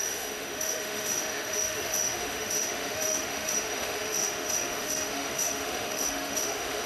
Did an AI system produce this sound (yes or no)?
yes